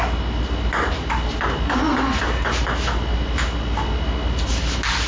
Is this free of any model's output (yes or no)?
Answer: yes